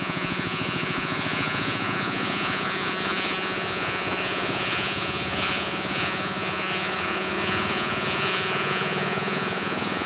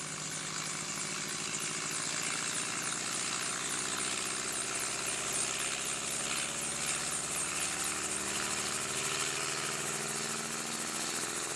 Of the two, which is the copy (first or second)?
first